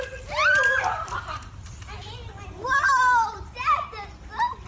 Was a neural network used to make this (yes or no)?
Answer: no